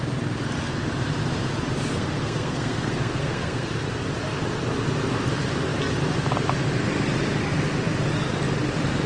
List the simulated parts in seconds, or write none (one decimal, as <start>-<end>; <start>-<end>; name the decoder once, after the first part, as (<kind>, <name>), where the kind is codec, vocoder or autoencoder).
1.9-3.7 (codec, SNAC)